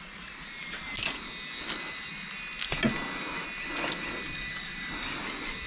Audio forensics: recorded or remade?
recorded